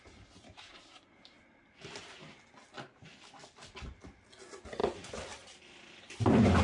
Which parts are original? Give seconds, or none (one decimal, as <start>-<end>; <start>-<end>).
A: 0.0-4.8